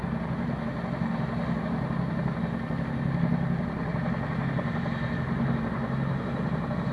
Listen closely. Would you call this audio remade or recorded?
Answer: recorded